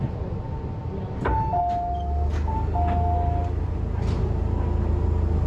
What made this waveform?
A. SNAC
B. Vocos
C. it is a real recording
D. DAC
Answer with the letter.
C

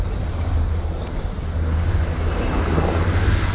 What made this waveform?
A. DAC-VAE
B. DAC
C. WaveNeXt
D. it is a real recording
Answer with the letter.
D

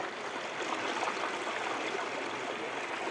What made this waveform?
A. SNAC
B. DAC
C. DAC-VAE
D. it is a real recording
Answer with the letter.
D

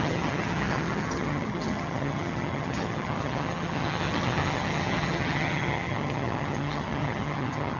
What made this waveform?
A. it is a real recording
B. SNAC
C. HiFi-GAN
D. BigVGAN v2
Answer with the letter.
C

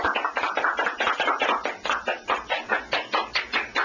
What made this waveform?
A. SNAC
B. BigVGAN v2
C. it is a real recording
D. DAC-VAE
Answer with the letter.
C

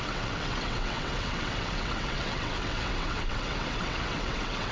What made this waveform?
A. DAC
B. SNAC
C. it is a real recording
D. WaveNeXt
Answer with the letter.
D